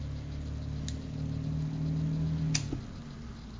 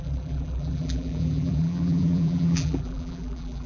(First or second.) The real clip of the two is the first